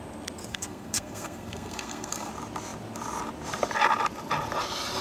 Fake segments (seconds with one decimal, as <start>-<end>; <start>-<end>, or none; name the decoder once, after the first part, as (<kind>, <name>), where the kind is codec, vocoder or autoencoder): 0.5-2.3 (codec, SNAC)

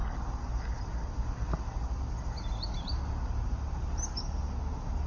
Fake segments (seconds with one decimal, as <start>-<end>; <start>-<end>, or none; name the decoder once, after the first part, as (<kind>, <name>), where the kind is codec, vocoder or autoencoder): none

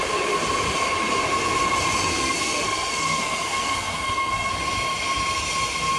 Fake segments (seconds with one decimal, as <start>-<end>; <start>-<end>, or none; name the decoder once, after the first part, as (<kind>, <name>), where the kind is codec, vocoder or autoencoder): 2.1-4.5 (codec, SNAC)

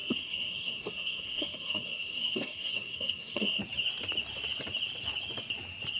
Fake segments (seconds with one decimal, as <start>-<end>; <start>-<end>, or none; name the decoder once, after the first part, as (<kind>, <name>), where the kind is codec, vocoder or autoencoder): 0.0-3.6 (codec, SNAC)

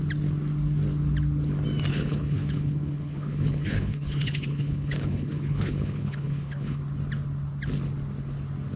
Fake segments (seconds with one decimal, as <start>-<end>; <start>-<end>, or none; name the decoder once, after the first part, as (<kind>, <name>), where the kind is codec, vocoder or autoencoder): 1.9-6.8 (codec, HILCodec)

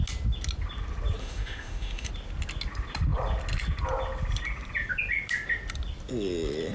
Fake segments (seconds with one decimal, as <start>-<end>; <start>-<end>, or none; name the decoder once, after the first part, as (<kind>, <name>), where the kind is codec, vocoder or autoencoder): 1.2-2.1 (autoencoder, DAC-VAE)